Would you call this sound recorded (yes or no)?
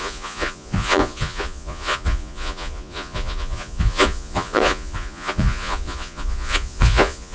no